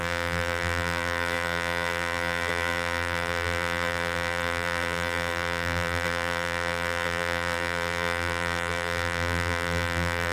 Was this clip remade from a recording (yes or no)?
yes